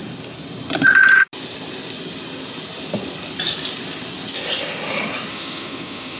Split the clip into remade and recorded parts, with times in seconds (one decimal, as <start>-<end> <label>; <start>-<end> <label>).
0.0-5.3 recorded; 5.3-6.2 remade